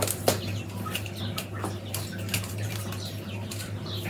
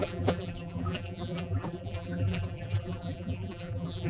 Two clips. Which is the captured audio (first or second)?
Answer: first